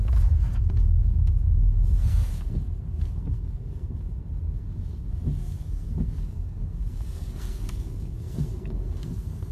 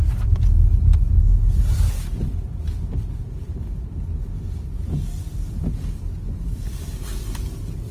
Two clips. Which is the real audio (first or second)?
second